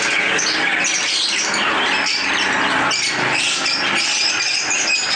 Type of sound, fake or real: real